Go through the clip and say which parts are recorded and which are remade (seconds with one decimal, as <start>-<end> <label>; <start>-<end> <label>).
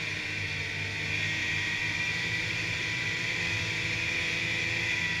0.0-1.4 recorded; 1.4-3.4 remade; 3.4-5.2 recorded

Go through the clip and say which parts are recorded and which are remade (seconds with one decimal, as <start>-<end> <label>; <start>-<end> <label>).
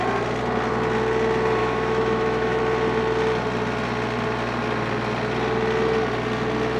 0.0-1.6 recorded; 1.6-2.6 remade; 2.6-6.8 recorded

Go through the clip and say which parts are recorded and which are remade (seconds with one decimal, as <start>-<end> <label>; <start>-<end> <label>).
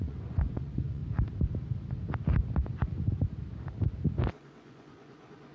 0.0-1.0 remade; 1.0-4.3 recorded; 4.3-5.5 remade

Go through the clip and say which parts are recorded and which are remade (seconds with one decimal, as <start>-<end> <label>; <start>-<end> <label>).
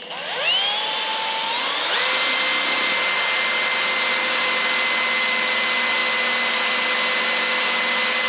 0.0-8.3 recorded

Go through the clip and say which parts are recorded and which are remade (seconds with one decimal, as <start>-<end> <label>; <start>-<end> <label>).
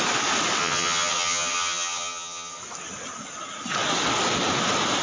0.0-0.6 recorded; 0.6-2.6 remade; 2.6-5.0 recorded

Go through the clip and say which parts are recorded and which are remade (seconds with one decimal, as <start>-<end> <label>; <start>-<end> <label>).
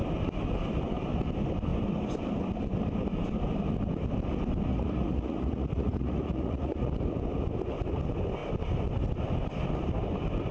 0.0-4.7 recorded; 4.7-6.9 remade; 6.9-10.5 recorded